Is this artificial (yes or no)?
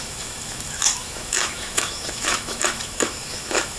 yes